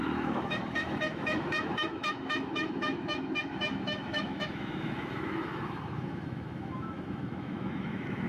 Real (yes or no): no